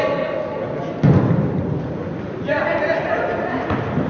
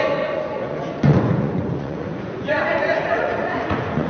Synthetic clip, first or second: second